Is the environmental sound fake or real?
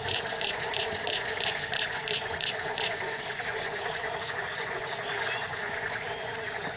fake